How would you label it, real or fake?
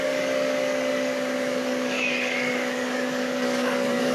fake